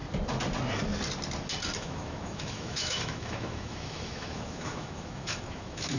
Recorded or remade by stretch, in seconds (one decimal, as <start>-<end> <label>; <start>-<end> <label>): 0.0-1.8 recorded; 1.8-6.0 remade